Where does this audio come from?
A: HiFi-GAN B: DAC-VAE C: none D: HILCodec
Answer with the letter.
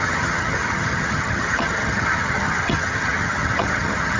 A